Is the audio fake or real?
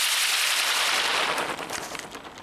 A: real